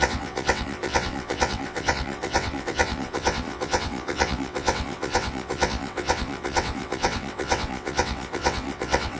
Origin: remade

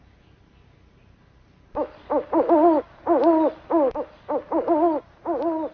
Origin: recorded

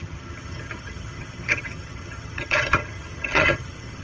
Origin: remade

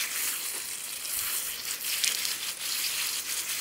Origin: recorded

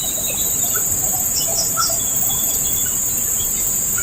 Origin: remade